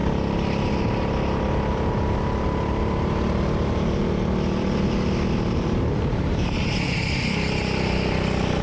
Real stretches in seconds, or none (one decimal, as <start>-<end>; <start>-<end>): 0.0-8.6